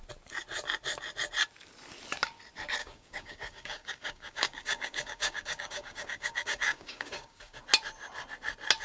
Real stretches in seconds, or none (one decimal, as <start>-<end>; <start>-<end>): 0.0-2.8; 7.6-8.8